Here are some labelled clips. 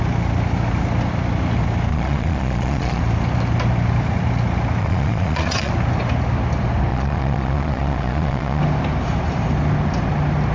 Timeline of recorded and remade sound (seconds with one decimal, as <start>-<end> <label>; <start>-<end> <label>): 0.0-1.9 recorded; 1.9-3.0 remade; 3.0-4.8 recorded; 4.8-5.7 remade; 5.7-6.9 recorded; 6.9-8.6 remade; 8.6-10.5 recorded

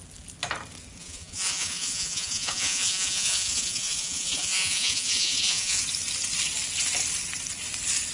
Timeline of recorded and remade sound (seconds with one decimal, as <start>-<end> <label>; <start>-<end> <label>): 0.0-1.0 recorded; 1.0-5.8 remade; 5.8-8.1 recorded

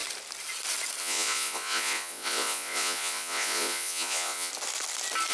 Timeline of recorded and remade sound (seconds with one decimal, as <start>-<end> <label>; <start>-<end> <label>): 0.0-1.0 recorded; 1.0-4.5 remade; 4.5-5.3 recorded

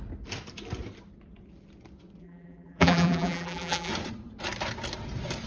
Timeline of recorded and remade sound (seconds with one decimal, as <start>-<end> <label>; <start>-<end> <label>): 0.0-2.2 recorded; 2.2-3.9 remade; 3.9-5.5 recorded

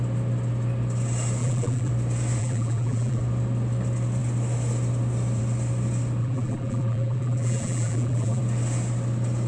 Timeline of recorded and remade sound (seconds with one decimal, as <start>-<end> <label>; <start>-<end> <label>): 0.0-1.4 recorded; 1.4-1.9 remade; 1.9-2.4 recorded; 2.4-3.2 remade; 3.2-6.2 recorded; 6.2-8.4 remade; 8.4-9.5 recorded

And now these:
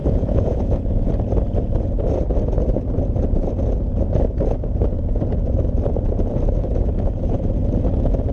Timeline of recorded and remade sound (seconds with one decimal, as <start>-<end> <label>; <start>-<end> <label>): 0.0-1.1 remade; 1.1-8.3 recorded

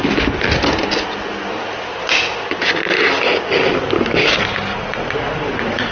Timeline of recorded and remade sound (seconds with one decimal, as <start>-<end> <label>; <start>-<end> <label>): 0.0-4.7 recorded; 4.7-5.9 remade

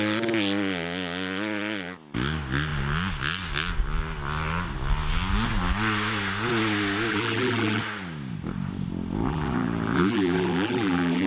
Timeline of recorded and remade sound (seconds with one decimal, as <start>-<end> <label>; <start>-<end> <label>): 0.0-7.1 recorded; 7.1-7.8 remade; 7.8-9.2 recorded; 9.2-11.3 remade